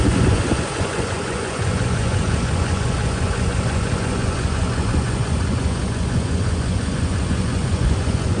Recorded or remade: remade